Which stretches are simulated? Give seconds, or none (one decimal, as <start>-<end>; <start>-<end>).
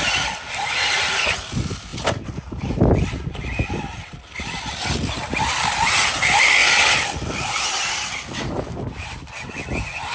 none